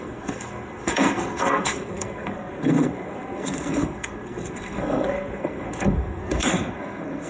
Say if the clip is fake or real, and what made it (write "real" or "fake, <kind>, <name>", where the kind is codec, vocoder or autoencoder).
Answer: fake, codec, SNAC